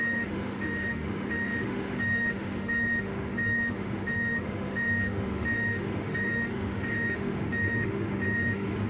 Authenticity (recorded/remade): remade